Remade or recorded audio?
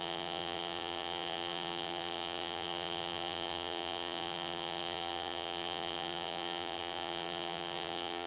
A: remade